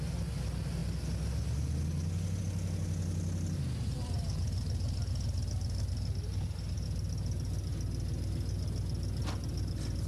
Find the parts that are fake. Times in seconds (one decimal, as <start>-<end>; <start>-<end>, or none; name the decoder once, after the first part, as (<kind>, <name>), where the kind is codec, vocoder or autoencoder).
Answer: none